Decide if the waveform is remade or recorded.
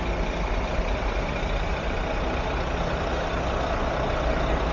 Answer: recorded